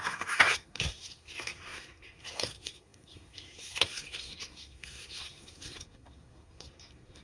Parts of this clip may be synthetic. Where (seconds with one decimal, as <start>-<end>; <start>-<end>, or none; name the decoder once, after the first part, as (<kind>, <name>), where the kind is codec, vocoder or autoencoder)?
0.0-7.2 (codec, SNAC)